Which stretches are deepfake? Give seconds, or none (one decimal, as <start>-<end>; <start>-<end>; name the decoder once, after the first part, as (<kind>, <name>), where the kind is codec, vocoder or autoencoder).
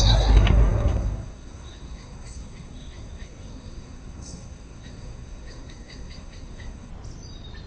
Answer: 0.0-6.9 (codec, SNAC)